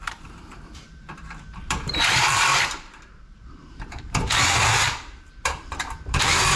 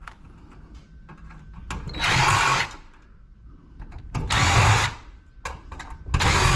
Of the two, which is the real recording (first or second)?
second